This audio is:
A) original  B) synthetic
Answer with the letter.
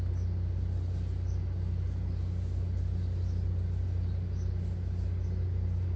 A